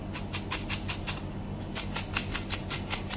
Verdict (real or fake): real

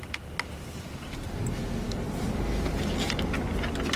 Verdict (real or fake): real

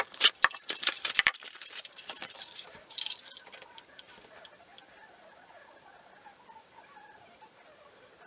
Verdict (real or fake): fake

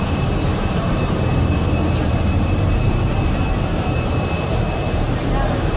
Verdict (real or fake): fake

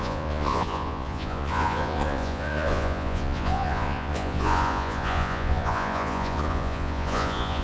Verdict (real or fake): fake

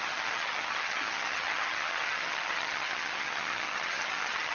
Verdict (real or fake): fake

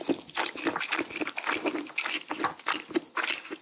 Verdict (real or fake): real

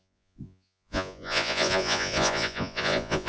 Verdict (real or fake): fake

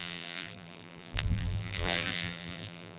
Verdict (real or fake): fake